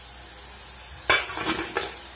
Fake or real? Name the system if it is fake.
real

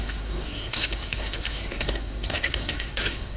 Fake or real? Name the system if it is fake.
fake, codec, SNAC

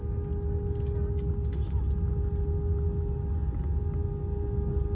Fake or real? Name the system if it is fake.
real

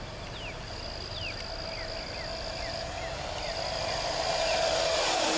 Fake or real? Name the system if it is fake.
real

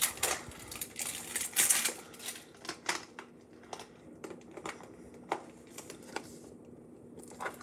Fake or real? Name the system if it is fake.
real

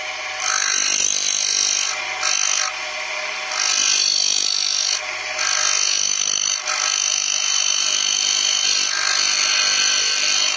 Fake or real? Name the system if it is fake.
real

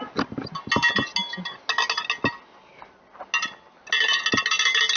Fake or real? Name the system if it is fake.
real